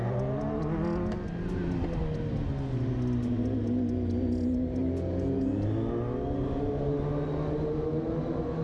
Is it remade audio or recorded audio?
recorded